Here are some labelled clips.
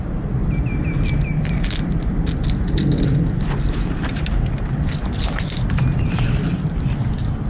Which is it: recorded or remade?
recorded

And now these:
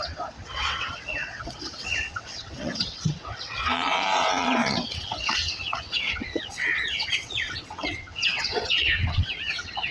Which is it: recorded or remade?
remade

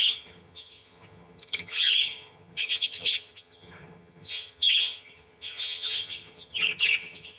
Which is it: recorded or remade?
remade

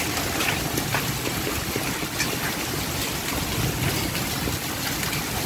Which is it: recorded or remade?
recorded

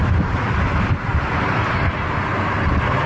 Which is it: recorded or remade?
recorded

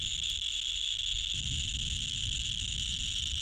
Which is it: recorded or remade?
recorded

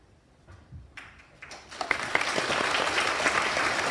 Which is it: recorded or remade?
recorded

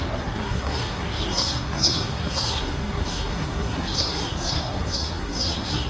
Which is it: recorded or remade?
remade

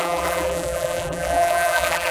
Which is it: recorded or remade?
remade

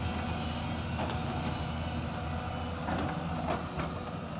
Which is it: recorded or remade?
recorded